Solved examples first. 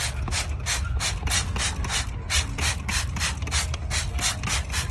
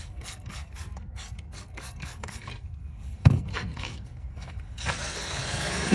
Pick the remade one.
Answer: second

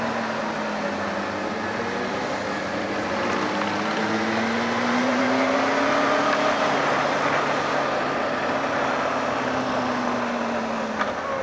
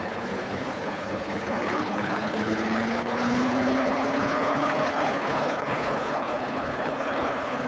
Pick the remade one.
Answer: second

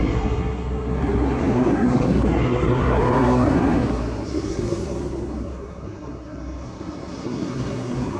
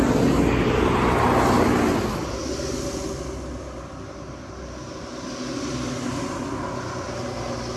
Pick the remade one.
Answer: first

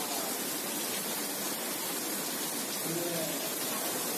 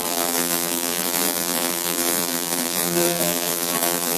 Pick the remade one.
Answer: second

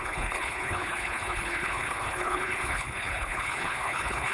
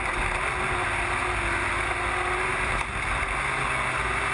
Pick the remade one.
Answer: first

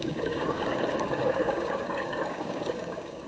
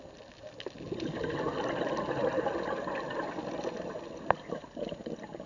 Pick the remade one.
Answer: first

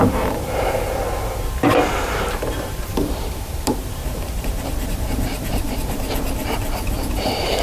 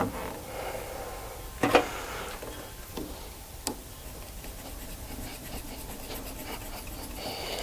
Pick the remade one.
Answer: first